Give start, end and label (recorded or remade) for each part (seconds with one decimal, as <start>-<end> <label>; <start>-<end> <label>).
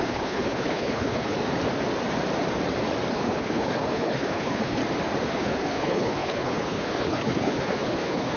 0.0-1.4 remade; 1.4-3.1 recorded; 3.1-4.8 remade; 4.8-5.3 recorded; 5.3-8.4 remade